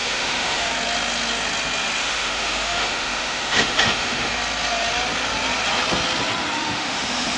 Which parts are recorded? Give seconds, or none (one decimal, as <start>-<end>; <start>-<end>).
0.7-2.0; 4.3-6.6